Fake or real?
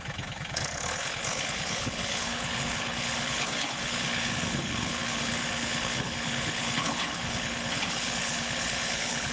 fake